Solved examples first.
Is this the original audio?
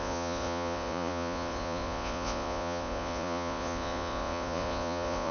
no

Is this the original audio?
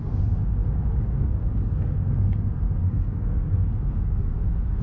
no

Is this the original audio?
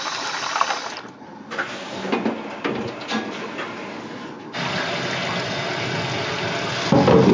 yes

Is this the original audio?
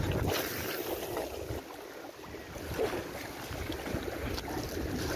yes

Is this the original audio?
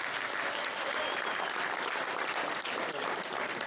yes